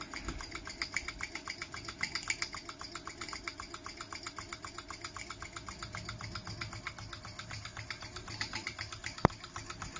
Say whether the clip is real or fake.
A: real